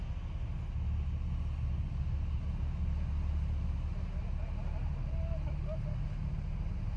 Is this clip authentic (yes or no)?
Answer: yes